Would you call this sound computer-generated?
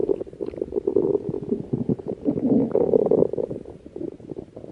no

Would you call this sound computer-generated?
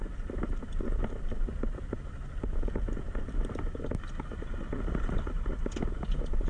no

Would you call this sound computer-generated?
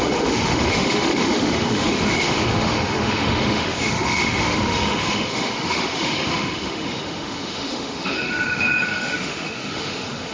yes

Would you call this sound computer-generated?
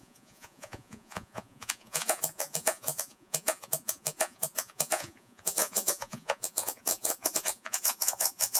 yes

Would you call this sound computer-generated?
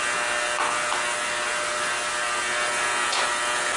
no